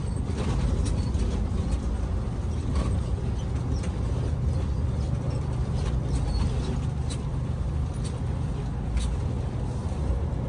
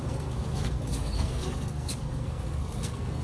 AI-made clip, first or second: second